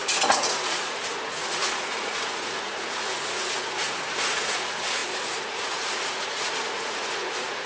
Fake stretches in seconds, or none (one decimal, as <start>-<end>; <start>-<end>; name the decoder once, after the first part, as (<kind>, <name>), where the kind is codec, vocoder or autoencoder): 0.0-7.7 (vocoder, Vocos)